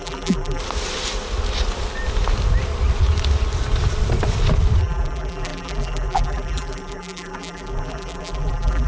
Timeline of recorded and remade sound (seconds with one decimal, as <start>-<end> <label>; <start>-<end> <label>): 0.0-0.6 remade; 0.6-4.8 recorded; 4.8-8.9 remade